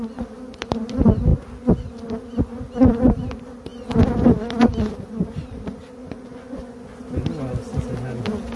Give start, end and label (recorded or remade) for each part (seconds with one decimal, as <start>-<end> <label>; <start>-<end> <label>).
0.0-6.0 recorded; 6.0-6.8 remade; 6.8-8.6 recorded